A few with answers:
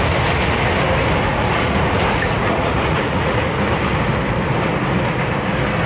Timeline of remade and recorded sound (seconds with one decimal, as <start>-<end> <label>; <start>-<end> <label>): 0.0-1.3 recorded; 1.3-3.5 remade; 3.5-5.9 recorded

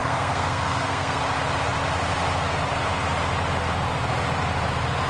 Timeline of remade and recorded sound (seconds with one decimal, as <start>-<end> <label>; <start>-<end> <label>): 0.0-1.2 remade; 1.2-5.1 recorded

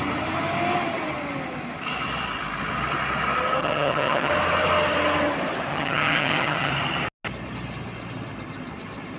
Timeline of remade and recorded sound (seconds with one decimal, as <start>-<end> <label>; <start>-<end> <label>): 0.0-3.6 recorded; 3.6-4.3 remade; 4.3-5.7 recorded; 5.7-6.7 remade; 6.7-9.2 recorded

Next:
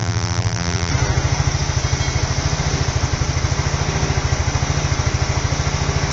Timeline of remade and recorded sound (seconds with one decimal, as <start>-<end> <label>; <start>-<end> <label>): 0.0-0.9 remade; 0.9-6.1 recorded